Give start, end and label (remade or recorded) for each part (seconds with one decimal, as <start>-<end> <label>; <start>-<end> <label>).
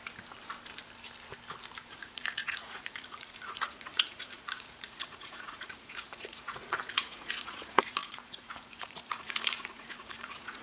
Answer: 0.0-1.9 recorded; 1.9-10.6 remade